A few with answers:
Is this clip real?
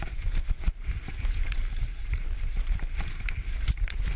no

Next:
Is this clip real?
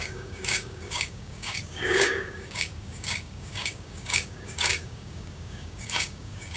no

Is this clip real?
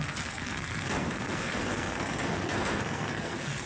no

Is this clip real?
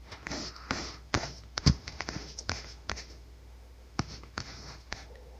no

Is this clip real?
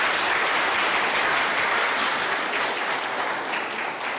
yes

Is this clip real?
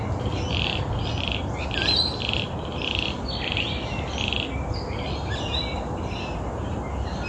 yes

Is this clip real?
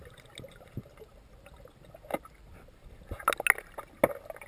yes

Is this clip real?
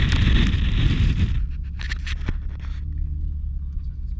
yes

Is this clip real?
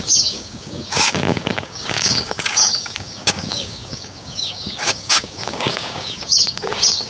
no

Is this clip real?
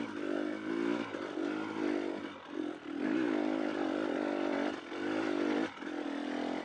yes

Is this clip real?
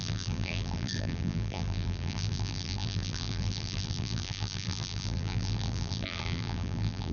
no